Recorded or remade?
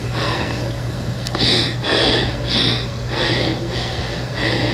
remade